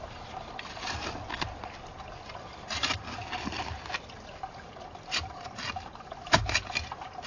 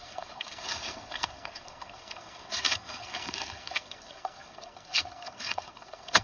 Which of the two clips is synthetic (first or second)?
second